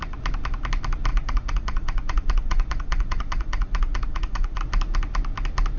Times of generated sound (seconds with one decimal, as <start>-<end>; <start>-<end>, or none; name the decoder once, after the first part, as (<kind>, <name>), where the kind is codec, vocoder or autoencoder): 1.1-4.6 (vocoder, Vocos)